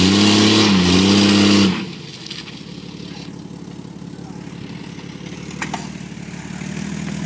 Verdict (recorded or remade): recorded